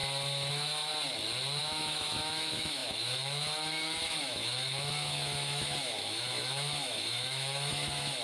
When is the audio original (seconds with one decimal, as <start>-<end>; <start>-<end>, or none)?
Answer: 0.0-0.5; 0.9-1.6